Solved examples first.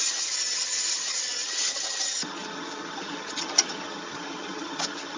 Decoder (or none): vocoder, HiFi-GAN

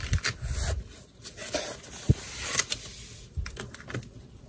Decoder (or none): none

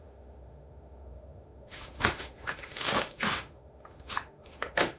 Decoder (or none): autoencoder, DAC-VAE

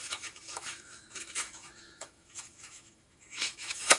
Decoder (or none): autoencoder, DAC-VAE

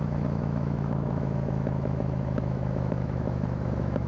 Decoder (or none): autoencoder, DAC-VAE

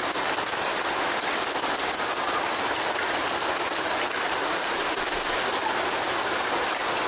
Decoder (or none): none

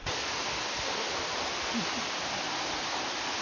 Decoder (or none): none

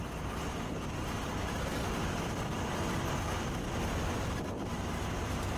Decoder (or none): none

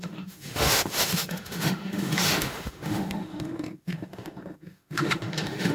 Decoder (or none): autoencoder, DAC-VAE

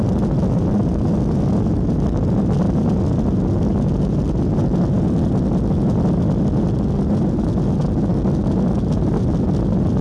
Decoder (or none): none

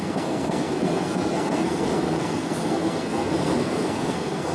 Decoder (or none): codec, SNAC